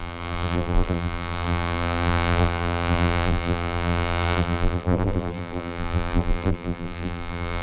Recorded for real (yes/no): no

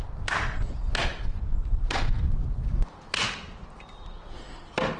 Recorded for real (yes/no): yes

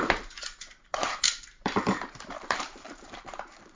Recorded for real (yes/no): no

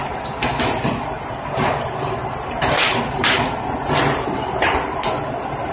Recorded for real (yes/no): yes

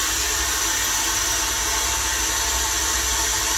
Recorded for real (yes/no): yes